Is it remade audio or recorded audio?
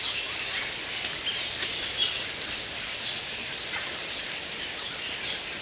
recorded